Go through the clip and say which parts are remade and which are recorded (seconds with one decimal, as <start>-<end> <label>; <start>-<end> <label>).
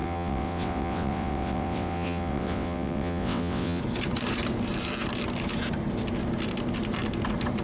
0.0-3.8 remade; 3.8-7.6 recorded